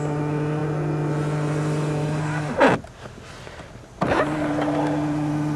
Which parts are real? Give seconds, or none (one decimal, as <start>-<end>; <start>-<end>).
0.0-5.6